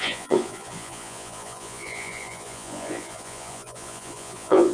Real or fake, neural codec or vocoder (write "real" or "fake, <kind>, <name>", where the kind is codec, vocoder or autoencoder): fake, vocoder, Vocos